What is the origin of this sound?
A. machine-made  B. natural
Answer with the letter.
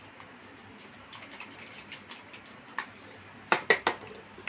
B